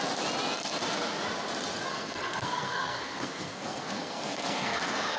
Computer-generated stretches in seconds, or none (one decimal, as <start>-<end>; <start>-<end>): 1.9-5.2